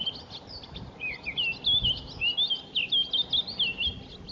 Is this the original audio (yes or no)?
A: yes